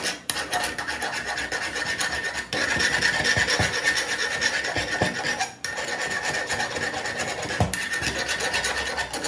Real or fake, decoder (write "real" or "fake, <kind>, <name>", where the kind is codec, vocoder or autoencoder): real